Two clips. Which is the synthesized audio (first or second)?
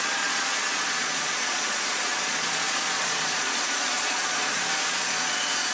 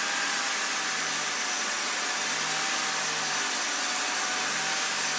first